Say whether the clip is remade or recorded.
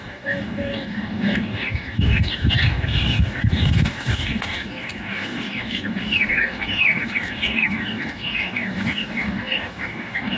remade